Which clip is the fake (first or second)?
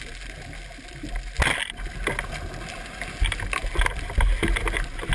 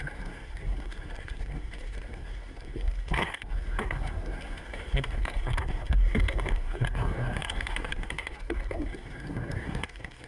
second